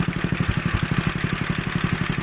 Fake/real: real